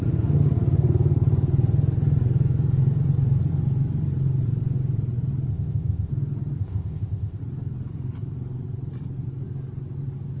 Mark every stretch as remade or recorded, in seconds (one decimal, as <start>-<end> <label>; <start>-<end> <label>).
0.0-5.5 recorded; 5.5-6.1 remade; 6.1-6.6 recorded; 6.6-7.4 remade; 7.4-10.4 recorded